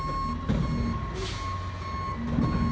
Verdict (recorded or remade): recorded